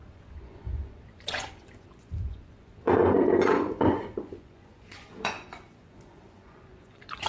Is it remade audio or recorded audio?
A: remade